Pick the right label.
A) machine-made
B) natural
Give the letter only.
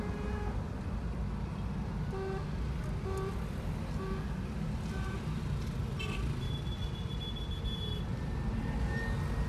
B